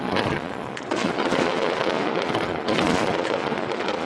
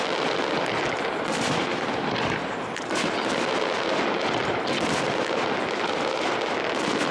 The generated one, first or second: first